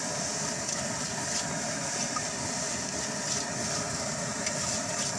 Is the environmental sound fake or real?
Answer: real